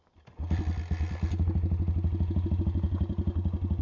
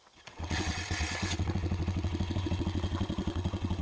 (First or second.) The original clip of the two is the first